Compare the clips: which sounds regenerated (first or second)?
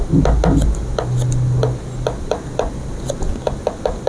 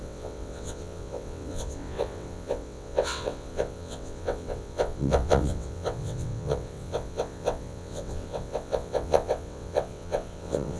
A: second